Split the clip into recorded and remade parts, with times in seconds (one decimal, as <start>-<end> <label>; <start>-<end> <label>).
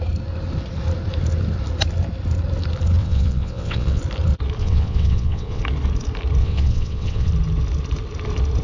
0.0-3.0 recorded; 3.0-4.0 remade; 4.0-4.6 recorded; 4.6-5.6 remade; 5.6-6.4 recorded; 6.4-7.3 remade; 7.3-8.6 recorded